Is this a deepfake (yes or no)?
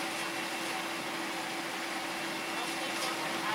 no